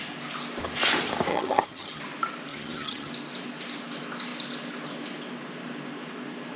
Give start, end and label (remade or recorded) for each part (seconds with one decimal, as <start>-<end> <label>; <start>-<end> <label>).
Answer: 0.0-1.3 recorded; 1.3-2.0 remade; 2.0-2.5 recorded; 2.5-3.1 remade; 3.1-6.6 recorded